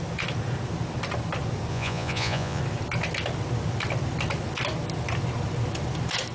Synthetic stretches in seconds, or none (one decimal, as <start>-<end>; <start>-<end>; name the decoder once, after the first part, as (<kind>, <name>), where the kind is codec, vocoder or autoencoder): 1.7-2.6 (vocoder, Vocos)